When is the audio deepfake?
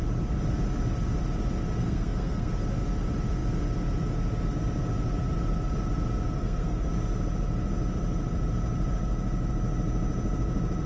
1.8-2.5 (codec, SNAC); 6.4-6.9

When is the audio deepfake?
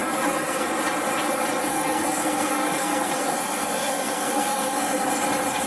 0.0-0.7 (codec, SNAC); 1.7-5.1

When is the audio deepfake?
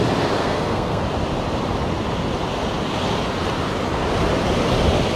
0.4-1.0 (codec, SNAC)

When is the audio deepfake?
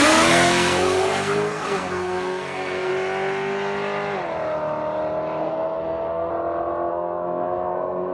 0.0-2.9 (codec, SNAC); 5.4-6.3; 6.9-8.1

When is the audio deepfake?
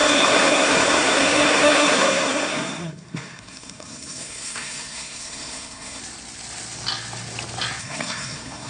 0.0-6.0 (codec, SNAC); 7.8-8.7